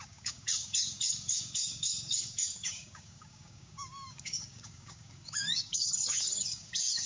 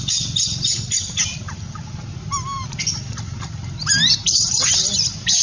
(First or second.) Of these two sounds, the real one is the second